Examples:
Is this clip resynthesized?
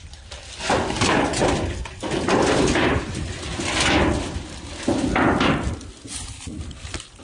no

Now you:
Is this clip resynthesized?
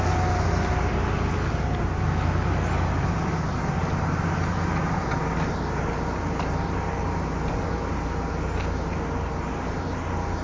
no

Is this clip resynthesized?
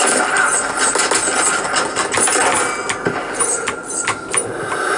no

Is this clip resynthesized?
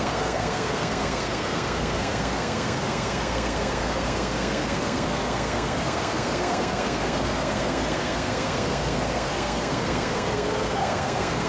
yes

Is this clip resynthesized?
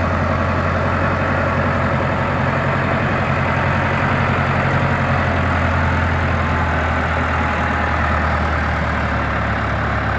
no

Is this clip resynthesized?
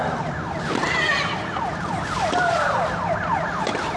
no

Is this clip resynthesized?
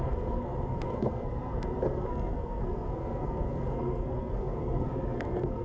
yes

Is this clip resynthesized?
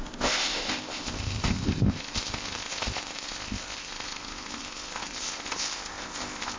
yes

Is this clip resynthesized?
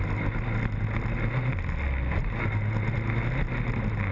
no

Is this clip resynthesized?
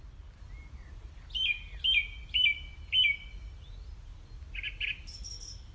no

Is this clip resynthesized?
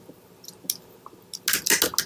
no